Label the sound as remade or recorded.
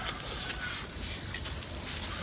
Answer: recorded